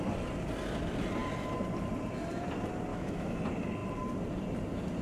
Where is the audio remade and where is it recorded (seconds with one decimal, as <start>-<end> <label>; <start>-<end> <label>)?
0.0-2.9 recorded; 2.9-3.4 remade; 3.4-5.0 recorded